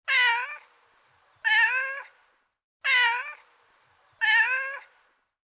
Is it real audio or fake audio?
real